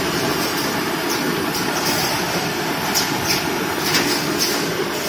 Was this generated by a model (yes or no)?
yes